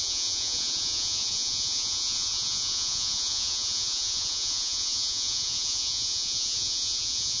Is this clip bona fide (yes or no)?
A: no